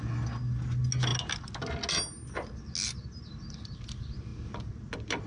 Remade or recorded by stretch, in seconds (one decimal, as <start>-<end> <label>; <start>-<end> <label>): 0.0-5.3 recorded